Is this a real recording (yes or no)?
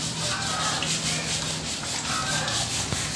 yes